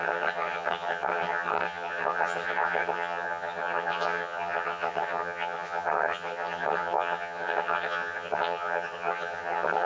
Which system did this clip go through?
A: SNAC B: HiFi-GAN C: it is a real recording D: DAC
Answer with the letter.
B